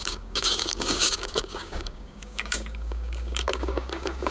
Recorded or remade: remade